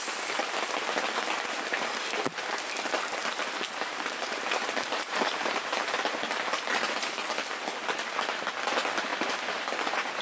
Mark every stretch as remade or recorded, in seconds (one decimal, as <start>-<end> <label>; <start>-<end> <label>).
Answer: 0.0-3.2 recorded; 3.2-6.0 remade; 6.0-9.1 recorded; 9.1-10.2 remade